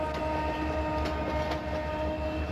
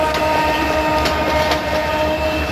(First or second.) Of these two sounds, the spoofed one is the second